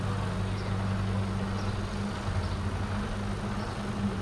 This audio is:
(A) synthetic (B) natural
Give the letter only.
B